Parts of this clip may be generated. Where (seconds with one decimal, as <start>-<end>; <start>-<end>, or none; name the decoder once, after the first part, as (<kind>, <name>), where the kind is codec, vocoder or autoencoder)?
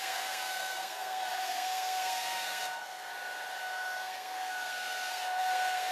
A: 0.0-3.1 (codec, SNAC); 3.6-5.9